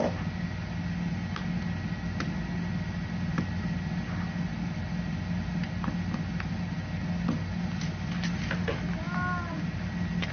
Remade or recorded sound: recorded